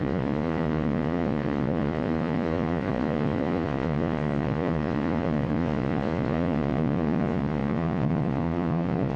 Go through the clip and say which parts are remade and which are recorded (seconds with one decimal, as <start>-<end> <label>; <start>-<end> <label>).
0.0-9.2 remade